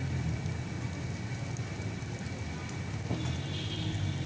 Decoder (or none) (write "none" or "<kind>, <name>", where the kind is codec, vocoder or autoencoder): none